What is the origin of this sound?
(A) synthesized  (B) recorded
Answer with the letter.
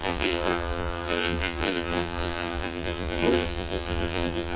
A